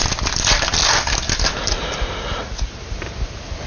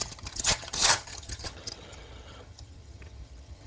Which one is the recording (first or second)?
first